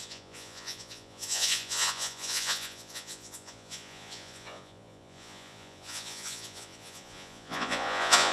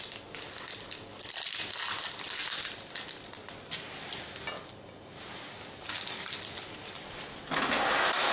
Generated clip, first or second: first